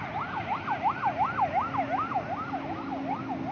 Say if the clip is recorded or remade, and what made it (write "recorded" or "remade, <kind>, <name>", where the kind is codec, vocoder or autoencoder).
recorded